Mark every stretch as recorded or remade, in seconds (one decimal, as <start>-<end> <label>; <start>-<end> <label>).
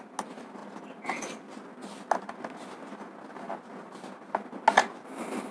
0.0-5.5 recorded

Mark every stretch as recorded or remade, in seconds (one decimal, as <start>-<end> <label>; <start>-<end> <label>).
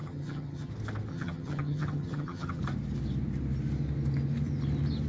0.0-0.7 remade; 0.7-1.1 recorded; 1.1-2.6 remade; 2.6-5.1 recorded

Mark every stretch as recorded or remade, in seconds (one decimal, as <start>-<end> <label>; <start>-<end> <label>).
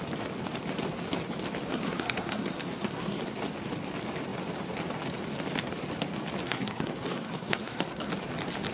0.0-1.7 recorded; 1.7-3.2 remade; 3.2-6.4 recorded; 6.4-8.1 remade; 8.1-8.7 recorded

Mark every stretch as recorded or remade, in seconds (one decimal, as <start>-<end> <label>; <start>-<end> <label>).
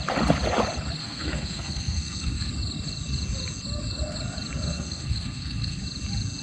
0.0-1.0 recorded; 1.0-2.5 remade; 2.5-4.7 recorded; 4.7-5.8 remade; 5.8-6.4 recorded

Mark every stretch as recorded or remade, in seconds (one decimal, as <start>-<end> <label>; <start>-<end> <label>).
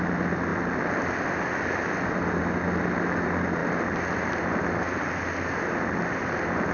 0.0-6.7 recorded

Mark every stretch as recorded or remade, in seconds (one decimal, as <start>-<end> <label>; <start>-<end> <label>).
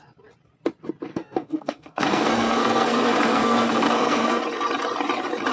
0.0-1.1 recorded; 1.1-4.4 remade; 4.4-5.5 recorded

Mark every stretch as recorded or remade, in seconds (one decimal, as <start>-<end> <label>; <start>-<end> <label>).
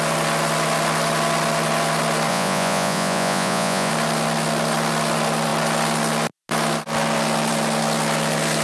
0.0-2.3 recorded; 2.3-3.9 remade; 3.9-8.6 recorded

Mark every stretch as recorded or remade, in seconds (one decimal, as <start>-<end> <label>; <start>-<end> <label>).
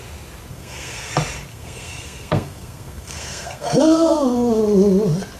0.0-0.5 recorded; 0.5-1.1 remade; 1.1-1.5 recorded; 1.5-4.6 remade; 4.6-5.4 recorded